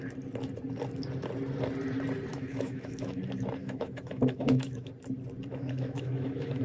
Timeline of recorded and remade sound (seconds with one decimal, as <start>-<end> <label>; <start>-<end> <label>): 0.0-2.3 recorded; 2.3-3.2 remade; 3.2-3.6 recorded; 3.6-4.9 remade; 4.9-5.5 recorded; 5.5-6.6 remade